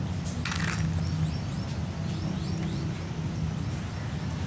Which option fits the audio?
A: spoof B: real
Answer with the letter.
B